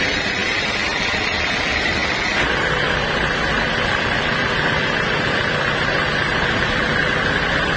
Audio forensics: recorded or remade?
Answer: remade